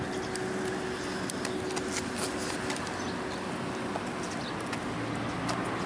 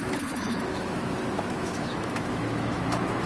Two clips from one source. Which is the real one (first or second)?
first